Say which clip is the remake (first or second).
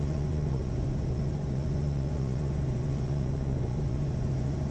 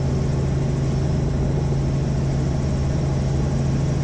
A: first